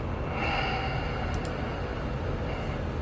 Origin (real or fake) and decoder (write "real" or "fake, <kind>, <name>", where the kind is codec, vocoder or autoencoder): real